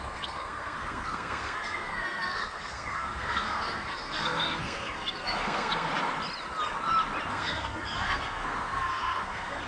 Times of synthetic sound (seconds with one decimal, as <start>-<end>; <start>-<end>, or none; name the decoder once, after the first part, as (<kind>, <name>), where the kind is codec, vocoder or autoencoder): 0.0-5.9 (codec, SNAC); 7.3-9.7